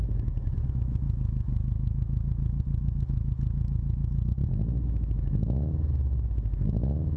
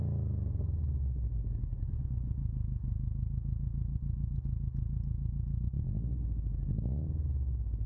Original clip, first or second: second